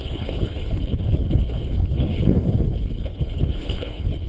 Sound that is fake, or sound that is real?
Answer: fake